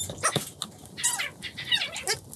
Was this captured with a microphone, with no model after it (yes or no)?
yes